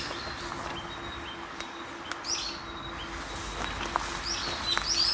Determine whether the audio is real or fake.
real